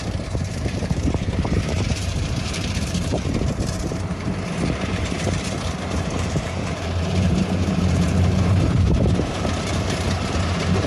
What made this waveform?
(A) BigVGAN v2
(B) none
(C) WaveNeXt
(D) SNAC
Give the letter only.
A